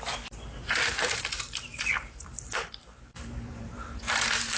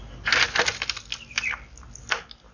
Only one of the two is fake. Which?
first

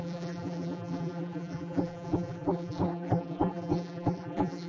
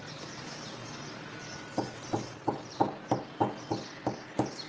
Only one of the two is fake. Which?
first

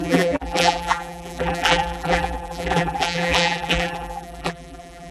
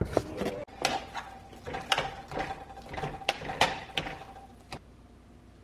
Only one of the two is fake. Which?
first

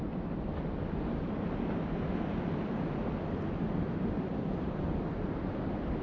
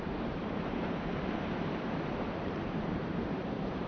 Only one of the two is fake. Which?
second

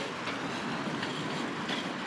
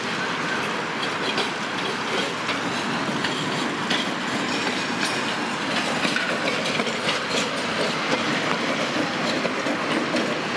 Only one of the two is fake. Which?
first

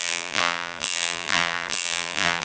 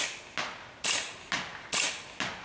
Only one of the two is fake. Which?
first